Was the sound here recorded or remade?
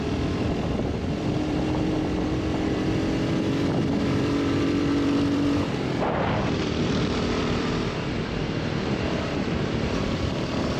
remade